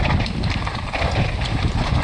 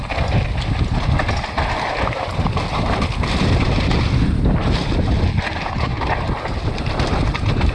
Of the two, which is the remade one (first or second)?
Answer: first